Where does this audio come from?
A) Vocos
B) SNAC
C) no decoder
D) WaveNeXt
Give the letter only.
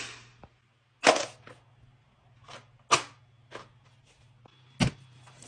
C